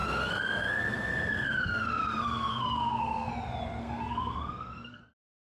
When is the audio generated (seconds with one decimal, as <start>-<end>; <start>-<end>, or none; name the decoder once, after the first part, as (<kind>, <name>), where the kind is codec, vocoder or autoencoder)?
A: 0.0-3.3 (codec, SNAC); 3.8-5.0